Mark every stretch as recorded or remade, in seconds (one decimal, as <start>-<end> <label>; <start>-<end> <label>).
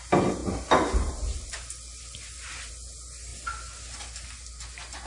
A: 0.0-5.1 recorded